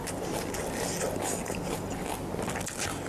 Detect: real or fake real